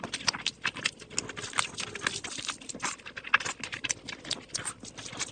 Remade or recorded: recorded